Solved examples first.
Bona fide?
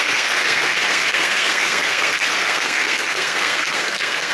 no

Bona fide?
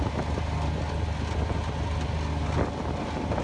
yes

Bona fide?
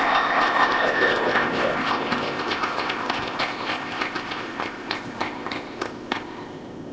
no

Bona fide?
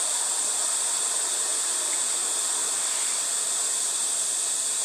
yes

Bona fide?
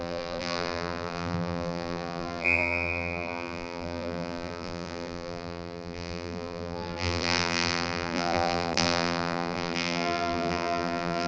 no